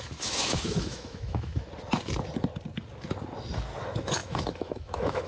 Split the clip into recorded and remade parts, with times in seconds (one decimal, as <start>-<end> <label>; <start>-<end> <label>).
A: 0.0-1.6 remade; 1.6-3.8 recorded; 3.8-5.3 remade